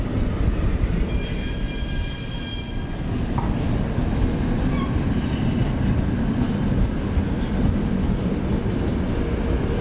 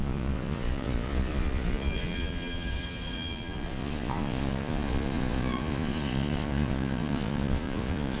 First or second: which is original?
first